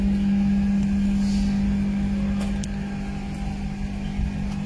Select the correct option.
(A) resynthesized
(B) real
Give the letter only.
B